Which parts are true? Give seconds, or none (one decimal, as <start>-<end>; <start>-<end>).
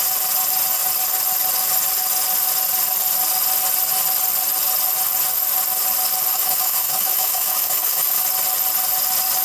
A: 0.0-6.3; 8.2-9.4